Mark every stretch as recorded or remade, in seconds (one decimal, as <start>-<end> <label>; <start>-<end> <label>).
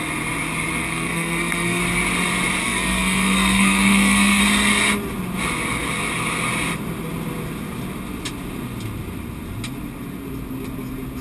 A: 0.0-0.8 recorded; 0.8-1.8 remade; 1.8-2.6 recorded; 2.6-4.4 remade; 4.4-11.2 recorded